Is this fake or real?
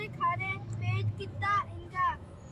fake